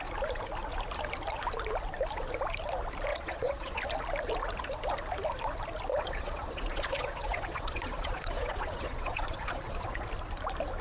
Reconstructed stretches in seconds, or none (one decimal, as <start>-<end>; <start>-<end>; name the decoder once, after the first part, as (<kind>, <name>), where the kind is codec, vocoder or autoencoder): 3.1-3.8 (vocoder, Vocos); 5.9-10.1